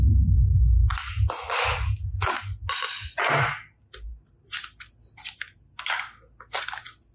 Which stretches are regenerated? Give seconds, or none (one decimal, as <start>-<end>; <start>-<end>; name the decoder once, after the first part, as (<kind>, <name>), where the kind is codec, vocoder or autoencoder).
none

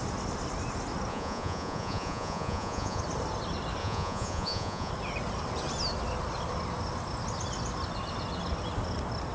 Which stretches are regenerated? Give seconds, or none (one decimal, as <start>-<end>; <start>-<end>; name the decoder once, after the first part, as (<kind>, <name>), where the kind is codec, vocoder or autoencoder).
1.1-3.0 (vocoder, Vocos); 3.8-4.9

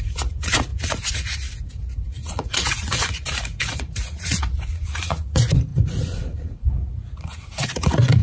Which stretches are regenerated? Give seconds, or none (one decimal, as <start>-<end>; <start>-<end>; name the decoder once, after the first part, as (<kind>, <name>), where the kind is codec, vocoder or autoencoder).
0.0-8.2 (vocoder, Vocos)

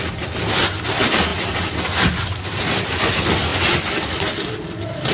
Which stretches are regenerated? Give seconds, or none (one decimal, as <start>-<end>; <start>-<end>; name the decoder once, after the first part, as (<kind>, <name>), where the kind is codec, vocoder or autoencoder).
none

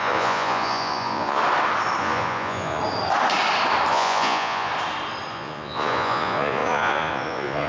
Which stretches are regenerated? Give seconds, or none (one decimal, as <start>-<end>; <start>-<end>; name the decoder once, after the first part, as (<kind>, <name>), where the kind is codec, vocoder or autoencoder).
0.0-1.4 (vocoder, Vocos); 2.0-2.8; 3.9-4.7; 5.3-7.7

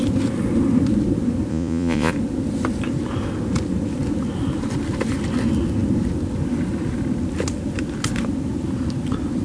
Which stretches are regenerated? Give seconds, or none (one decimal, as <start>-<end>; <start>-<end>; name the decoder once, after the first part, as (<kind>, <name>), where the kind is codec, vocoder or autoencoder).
1.5-2.1 (vocoder, Vocos)

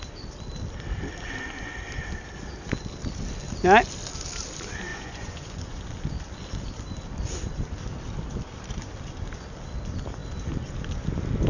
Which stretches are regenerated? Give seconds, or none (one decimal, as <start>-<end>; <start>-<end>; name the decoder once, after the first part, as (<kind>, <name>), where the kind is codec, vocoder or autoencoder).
4.9-5.8 (vocoder, Vocos)

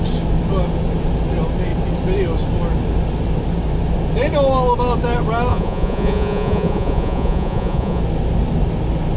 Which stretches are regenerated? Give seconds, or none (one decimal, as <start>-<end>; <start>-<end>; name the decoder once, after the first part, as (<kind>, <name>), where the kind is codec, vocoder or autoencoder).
5.5-8.0 (vocoder, Vocos)